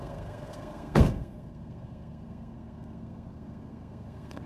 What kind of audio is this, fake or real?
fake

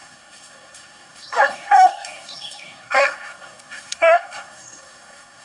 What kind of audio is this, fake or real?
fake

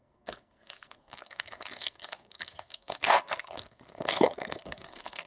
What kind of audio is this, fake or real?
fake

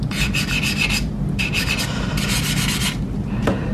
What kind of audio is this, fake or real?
real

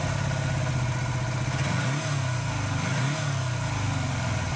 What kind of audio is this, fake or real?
real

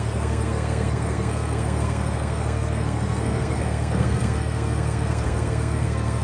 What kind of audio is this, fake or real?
fake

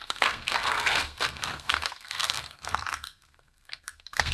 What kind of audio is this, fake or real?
fake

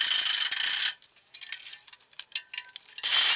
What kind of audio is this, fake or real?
real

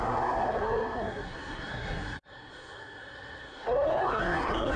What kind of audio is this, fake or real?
fake